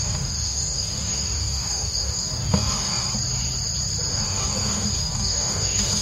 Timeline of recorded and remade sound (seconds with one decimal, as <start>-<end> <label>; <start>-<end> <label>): 0.0-3.0 remade; 3.0-4.1 recorded; 4.1-6.0 remade